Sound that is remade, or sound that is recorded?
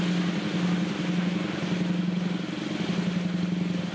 recorded